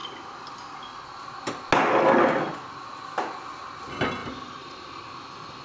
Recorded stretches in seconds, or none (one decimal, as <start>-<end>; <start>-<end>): 0.0-4.2; 5.0-5.6